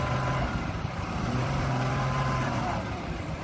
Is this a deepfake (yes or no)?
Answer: yes